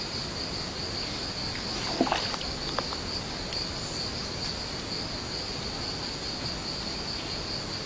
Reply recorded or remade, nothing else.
recorded